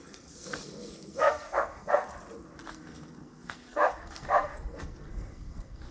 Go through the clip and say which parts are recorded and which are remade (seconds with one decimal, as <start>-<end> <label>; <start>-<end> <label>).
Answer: 0.0-2.1 remade; 2.1-2.7 recorded; 2.7-5.9 remade